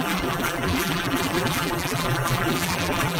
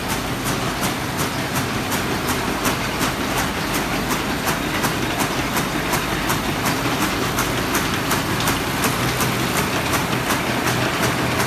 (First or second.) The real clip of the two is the second